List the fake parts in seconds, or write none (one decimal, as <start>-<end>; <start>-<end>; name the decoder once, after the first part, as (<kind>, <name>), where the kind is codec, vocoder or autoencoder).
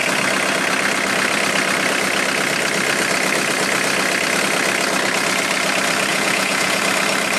6.1-6.8 (vocoder, Vocos)